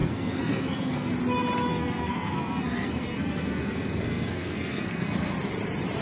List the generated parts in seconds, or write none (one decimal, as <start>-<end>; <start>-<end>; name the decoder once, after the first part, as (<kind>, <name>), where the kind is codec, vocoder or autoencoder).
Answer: 0.0-1.1 (codec, SNAC); 1.7-5.3